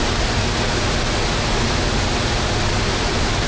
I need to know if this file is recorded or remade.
recorded